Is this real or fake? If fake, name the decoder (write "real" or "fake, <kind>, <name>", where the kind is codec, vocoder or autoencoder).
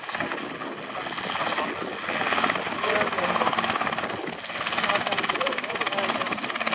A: real